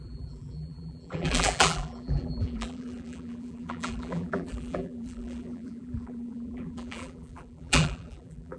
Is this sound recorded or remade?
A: remade